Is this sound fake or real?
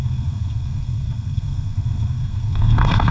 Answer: fake